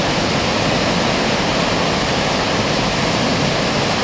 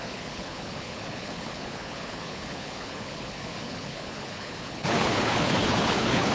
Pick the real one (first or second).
first